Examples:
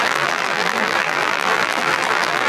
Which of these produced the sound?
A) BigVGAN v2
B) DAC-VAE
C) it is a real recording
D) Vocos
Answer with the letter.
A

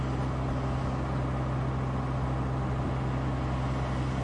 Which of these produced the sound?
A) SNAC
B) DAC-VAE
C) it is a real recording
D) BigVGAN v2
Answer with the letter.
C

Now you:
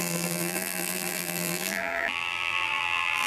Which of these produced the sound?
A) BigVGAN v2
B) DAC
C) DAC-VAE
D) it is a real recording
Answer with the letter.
A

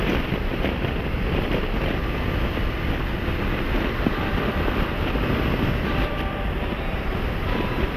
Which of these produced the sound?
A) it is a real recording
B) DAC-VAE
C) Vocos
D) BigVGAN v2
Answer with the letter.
D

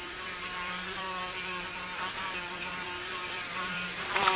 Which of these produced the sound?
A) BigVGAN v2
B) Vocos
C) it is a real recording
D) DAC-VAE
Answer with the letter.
A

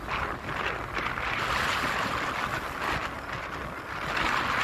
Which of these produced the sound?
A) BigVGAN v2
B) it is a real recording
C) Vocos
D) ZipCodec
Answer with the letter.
B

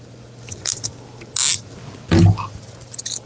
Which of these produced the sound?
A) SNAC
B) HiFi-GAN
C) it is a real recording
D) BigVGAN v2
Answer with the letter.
C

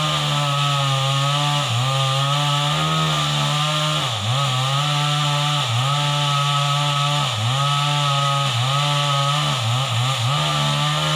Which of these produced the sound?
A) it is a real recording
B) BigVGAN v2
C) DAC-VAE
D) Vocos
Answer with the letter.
A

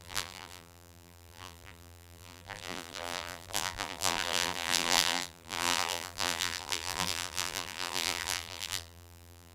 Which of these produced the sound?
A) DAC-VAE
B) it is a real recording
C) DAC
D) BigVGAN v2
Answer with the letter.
D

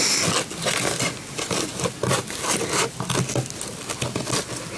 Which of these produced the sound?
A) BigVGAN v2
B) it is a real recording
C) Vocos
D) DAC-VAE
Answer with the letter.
B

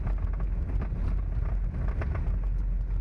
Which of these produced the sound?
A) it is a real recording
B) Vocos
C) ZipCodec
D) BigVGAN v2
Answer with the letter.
A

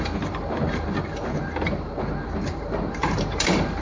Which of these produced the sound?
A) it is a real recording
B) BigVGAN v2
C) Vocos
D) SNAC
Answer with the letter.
B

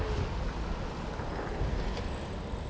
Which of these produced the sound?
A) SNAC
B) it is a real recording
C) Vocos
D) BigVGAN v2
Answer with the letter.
B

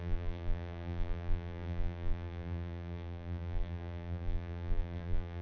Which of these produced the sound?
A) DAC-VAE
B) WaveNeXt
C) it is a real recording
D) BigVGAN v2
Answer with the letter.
D